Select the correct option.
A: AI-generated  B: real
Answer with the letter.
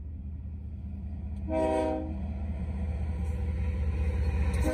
B